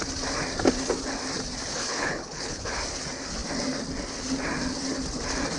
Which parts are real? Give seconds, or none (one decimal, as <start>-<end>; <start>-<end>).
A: 0.0-1.7; 2.8-5.6

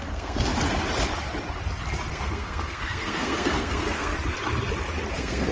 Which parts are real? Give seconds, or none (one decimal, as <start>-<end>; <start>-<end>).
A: 0.5-2.1; 4.1-5.1

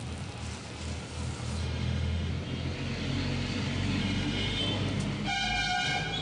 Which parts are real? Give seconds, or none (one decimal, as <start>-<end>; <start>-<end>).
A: 0.0-1.6; 2.3-4.0; 4.6-6.2

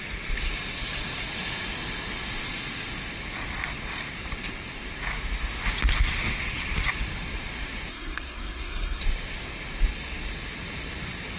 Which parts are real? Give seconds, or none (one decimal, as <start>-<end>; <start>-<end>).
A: 0.0-7.9; 9.0-11.4

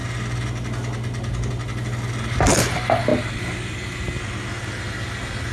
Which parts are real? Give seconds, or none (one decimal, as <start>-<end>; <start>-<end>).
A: 0.0-5.5